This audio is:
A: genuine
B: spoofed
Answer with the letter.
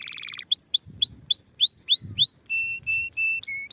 A